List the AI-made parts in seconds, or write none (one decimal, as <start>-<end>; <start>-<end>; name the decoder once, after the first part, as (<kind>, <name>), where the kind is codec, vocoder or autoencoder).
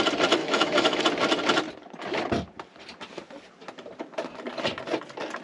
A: 0.4-1.0 (autoencoder, DAC-VAE)